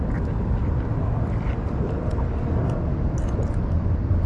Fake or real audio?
real